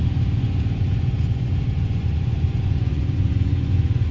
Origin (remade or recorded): remade